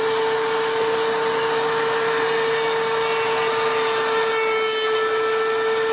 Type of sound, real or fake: real